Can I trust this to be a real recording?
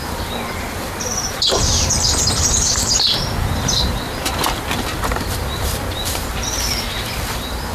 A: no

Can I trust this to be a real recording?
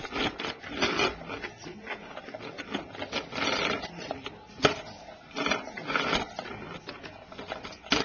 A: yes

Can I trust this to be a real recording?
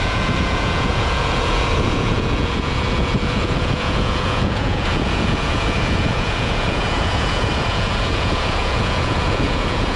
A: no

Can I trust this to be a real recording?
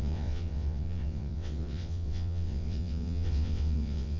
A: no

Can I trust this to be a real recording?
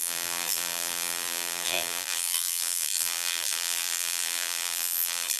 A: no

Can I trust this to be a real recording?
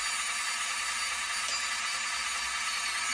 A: yes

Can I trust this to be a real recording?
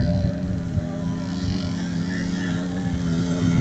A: yes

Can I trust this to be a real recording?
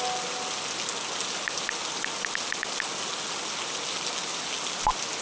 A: yes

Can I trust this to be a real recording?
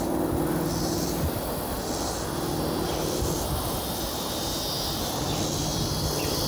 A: yes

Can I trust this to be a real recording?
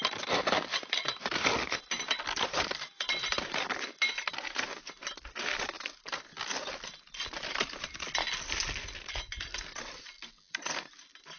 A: yes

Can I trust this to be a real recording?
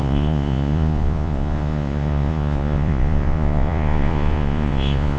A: no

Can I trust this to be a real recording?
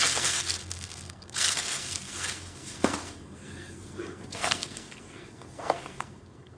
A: no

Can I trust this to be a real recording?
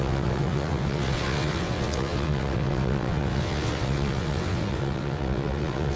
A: no